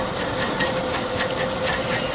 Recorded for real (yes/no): yes